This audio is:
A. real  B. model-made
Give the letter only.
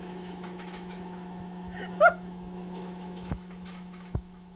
B